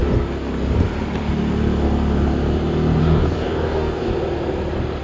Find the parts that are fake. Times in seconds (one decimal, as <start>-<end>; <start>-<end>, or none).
3.0-4.1